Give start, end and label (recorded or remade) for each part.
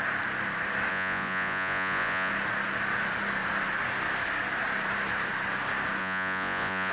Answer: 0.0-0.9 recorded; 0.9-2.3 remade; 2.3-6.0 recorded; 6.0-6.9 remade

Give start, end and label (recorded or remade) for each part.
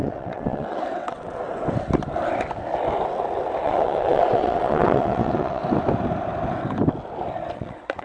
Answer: 0.0-1.4 remade; 1.4-3.6 recorded; 3.6-5.6 remade; 5.6-7.5 recorded; 7.5-8.0 remade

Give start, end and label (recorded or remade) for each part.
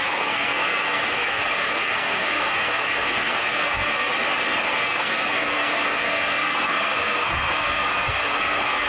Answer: 0.0-4.1 remade; 4.1-4.7 recorded; 4.7-8.9 remade